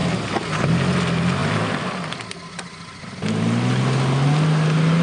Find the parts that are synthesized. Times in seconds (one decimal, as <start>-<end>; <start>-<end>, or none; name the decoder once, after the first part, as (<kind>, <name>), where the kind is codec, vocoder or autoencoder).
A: none